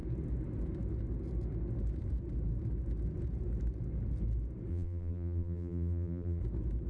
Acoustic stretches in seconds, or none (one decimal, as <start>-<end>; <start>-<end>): 0.0-4.7; 6.4-6.9